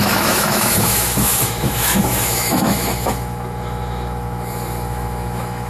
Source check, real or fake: fake